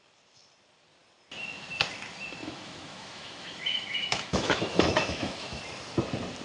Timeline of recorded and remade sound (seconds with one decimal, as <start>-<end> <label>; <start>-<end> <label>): 0.0-2.4 recorded; 2.4-5.6 remade; 5.6-6.4 recorded

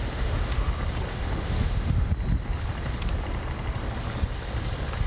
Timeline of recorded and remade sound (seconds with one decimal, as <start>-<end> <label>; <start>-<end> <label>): 0.0-0.7 remade; 0.7-1.1 recorded; 1.1-2.1 remade; 2.1-5.1 recorded